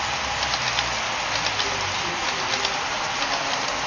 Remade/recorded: recorded